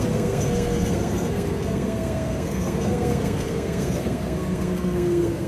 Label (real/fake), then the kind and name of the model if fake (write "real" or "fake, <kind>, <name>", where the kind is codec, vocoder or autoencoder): fake, codec, SNAC